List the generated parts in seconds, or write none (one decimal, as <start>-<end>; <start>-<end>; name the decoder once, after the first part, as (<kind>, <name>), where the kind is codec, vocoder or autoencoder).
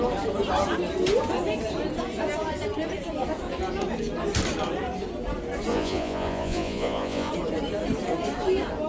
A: 5.7-7.3 (vocoder, Vocos)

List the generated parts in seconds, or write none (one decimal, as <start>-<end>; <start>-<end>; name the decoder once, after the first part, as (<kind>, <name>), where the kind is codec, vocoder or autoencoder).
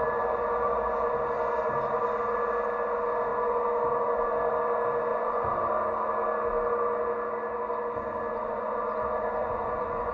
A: 5.1-5.7 (vocoder, Vocos); 9.4-10.1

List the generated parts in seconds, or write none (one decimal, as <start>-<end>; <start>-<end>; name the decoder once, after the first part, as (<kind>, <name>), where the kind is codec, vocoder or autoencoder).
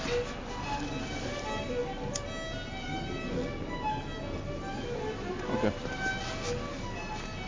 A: none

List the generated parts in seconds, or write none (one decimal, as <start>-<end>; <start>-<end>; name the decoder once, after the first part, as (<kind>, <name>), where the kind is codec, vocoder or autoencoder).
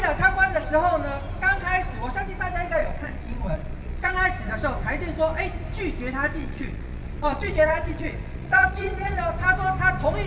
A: 2.8-4.1 (vocoder, Vocos); 6.4-9.2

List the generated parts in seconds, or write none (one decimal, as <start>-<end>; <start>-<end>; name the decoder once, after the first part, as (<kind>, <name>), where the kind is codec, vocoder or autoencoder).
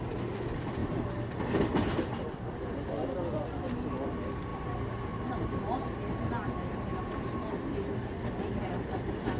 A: none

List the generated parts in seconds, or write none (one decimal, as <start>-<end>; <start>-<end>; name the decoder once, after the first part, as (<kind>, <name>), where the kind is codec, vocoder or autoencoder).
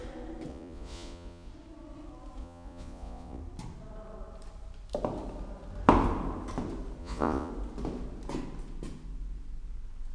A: 0.5-1.5 (vocoder, Vocos); 2.4-3.4; 7.0-7.5